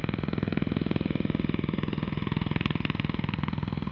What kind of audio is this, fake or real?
fake